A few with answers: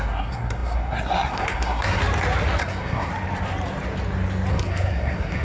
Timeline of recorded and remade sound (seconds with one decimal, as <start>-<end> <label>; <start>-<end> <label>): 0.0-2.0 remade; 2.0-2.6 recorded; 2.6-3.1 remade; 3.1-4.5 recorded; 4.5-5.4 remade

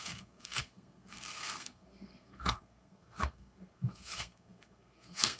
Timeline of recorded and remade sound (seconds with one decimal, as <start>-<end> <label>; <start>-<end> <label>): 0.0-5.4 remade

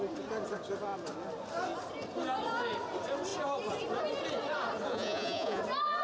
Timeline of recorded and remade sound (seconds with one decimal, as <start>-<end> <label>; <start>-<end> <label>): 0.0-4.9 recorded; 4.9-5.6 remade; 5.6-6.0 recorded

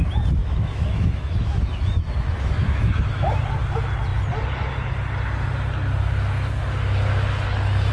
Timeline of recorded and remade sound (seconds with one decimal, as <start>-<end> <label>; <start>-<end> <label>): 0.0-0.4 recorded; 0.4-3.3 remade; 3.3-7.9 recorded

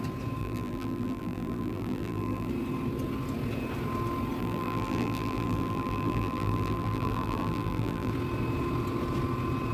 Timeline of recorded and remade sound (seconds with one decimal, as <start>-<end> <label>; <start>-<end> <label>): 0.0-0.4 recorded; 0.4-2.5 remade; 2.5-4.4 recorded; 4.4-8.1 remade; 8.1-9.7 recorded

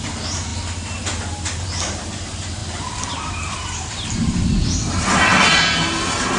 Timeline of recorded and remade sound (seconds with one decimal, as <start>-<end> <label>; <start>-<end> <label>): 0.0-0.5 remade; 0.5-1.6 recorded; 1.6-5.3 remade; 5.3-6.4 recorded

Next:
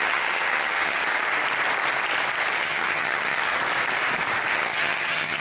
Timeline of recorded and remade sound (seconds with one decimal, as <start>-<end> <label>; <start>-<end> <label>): 0.0-1.0 remade; 1.0-2.6 recorded; 2.6-3.5 remade; 3.5-4.5 recorded; 4.5-5.4 remade